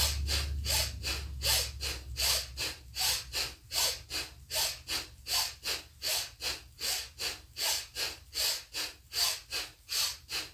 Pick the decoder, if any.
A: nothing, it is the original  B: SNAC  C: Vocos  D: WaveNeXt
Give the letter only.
A